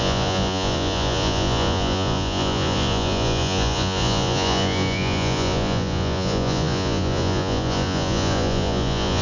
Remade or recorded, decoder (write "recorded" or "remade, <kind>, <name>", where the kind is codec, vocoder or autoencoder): remade, vocoder, Vocos